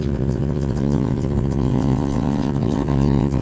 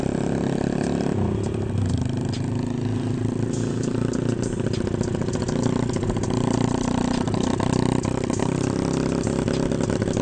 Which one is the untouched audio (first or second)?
second